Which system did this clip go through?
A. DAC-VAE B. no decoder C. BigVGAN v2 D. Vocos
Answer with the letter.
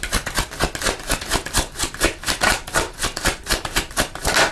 B